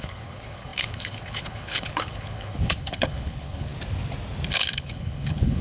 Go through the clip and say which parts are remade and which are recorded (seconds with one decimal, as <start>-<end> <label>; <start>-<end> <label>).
0.0-3.7 remade; 3.7-4.5 recorded; 4.5-5.6 remade